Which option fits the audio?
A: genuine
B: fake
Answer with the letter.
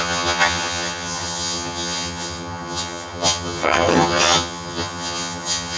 B